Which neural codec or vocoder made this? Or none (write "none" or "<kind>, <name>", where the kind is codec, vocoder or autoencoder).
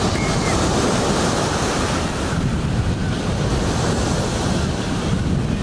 none